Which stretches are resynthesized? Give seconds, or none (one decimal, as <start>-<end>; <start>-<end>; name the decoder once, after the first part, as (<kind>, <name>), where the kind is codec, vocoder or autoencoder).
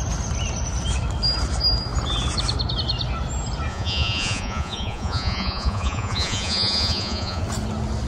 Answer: 3.7-7.4 (vocoder, Vocos)